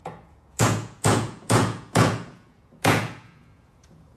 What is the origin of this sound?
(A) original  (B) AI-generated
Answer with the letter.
B